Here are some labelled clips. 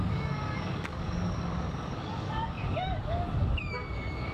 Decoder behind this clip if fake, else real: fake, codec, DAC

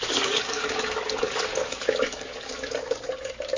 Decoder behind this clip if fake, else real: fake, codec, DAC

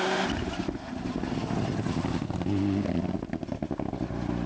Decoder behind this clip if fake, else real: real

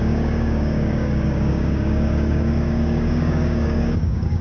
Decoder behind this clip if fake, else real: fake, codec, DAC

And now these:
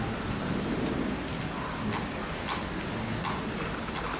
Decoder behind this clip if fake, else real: real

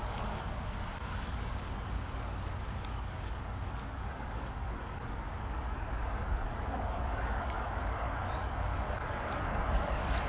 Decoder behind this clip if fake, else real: fake, codec, DAC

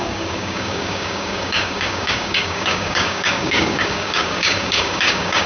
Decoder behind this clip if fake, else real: fake, codec, DAC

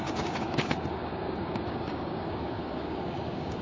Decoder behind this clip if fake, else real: fake, codec, DAC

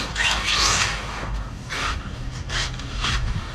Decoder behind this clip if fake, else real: fake, codec, DAC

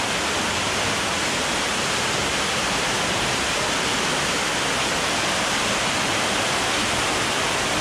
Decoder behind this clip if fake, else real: real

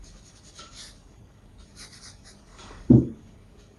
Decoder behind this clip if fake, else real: fake, codec, DAC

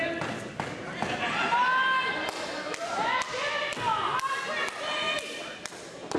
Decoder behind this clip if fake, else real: real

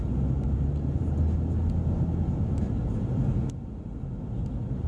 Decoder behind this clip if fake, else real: real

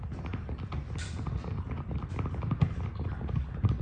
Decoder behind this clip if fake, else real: real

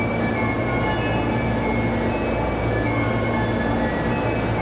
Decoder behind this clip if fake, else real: real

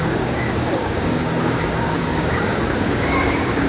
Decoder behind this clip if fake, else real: fake, codec, DAC